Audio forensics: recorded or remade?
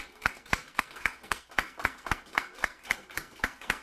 remade